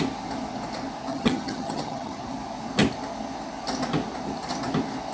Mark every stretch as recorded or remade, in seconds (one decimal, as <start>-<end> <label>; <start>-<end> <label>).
0.0-1.1 recorded; 1.1-2.2 remade; 2.2-5.1 recorded

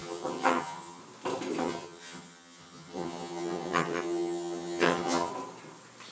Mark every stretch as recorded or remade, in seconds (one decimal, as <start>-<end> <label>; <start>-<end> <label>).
0.0-1.0 remade; 1.0-1.6 recorded; 1.6-5.3 remade; 5.3-6.1 recorded

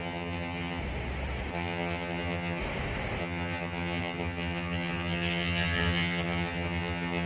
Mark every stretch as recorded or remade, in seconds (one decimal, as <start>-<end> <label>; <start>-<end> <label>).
0.0-0.8 remade; 0.8-1.5 recorded; 1.5-2.6 remade; 2.6-3.2 recorded; 3.2-7.3 remade